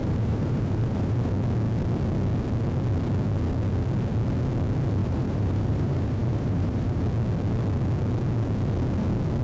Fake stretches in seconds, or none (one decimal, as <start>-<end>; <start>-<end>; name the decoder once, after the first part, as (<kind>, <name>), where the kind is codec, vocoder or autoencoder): 0.0-1.3 (vocoder, BigVGAN v2); 5.0-7.0